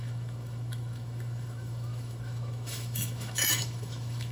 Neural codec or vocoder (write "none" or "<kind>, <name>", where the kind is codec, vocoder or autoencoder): autoencoder, DAC-VAE